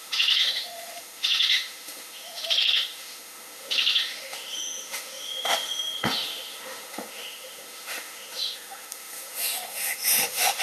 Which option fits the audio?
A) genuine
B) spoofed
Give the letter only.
B